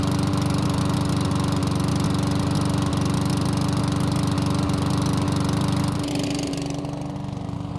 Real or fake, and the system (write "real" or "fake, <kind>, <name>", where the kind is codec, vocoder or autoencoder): real